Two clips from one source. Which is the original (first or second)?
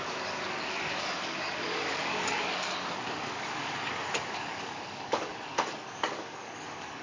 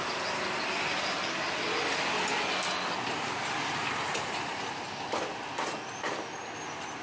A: second